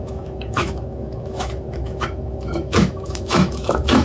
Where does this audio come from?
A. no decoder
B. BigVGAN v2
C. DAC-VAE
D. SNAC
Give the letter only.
C